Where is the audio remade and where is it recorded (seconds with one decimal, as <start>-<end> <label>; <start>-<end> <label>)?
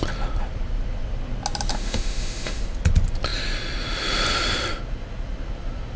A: 0.0-1.7 recorded; 1.7-2.6 remade; 2.6-6.0 recorded